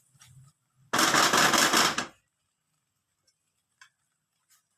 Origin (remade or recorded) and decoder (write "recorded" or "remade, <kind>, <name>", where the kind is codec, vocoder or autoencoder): recorded